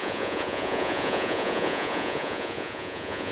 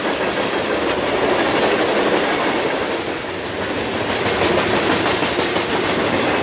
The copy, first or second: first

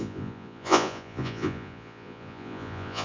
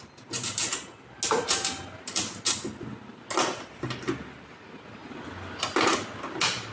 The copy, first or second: first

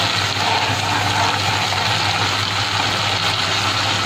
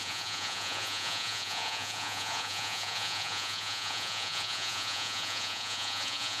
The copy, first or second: second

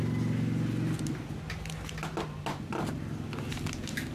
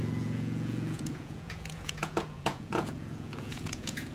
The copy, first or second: second